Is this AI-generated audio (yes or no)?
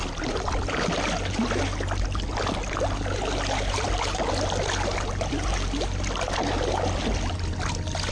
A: no